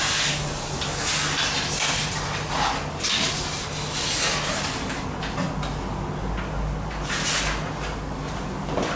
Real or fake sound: real